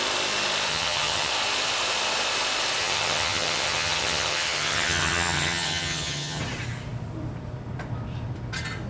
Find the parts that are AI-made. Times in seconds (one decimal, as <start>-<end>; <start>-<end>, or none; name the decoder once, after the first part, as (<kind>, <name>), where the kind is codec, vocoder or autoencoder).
0.7-1.3 (vocoder, HiFi-GAN); 2.8-6.4